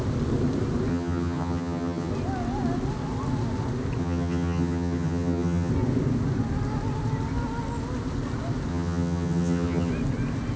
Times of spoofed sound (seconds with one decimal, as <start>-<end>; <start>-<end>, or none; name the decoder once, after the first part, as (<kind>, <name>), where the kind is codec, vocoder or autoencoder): 0.9-2.1 (vocoder, HiFi-GAN); 4.0-5.7; 8.7-9.9